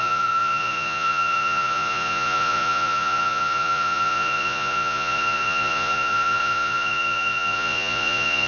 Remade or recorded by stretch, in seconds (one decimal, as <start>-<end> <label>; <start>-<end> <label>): 0.0-8.5 remade